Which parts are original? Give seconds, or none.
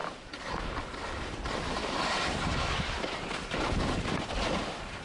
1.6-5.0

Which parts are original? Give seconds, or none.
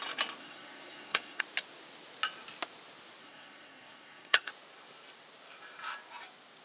0.0-0.4; 1.4-3.2; 4.5-6.6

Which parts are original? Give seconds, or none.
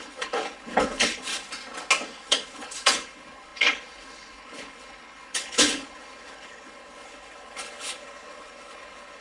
1.3-2.2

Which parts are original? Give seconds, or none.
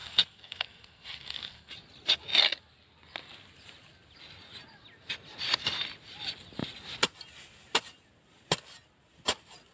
1.7-9.7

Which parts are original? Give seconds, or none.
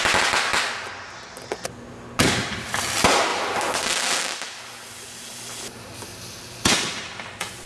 0.0-7.7